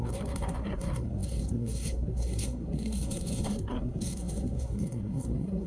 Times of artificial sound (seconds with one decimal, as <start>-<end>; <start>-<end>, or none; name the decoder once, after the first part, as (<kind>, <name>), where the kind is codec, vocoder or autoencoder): 0.0-5.7 (codec, SNAC)